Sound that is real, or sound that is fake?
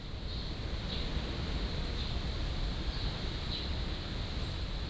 real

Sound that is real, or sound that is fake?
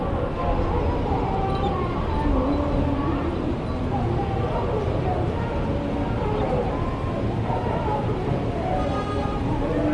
real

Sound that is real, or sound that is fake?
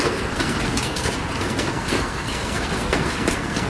fake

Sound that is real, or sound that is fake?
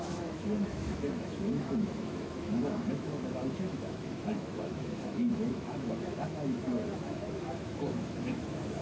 fake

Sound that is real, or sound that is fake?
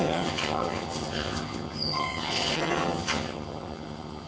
fake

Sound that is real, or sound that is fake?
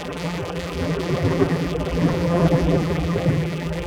fake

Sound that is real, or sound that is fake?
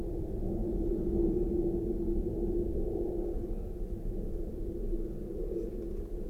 real